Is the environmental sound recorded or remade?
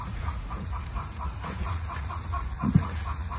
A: remade